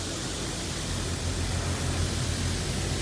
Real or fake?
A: real